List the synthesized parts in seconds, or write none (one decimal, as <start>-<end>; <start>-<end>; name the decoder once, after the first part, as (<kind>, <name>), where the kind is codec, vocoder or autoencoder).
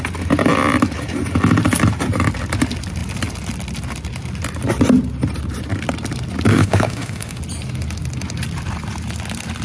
6.5-7.4 (autoencoder, DAC-VAE)